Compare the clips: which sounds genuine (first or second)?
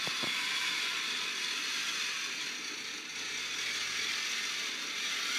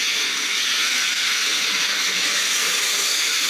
first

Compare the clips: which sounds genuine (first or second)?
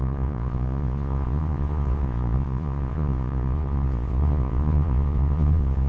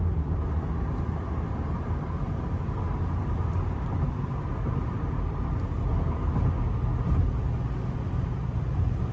second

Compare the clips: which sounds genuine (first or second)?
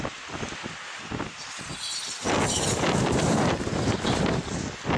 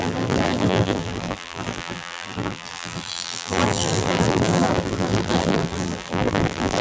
first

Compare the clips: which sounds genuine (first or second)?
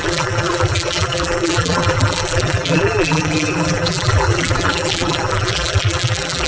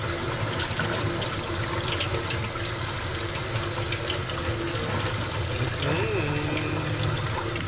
second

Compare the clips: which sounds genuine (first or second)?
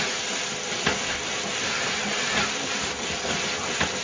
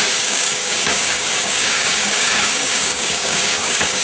first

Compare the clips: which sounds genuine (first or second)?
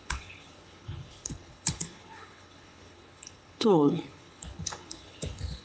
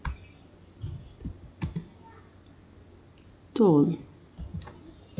second